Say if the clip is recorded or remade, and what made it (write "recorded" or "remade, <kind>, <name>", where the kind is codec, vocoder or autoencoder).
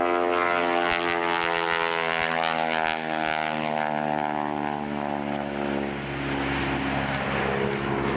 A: recorded